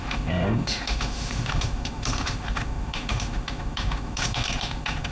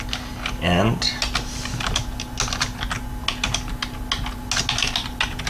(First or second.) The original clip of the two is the second